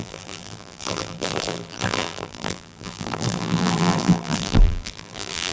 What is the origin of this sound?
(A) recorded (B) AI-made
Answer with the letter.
B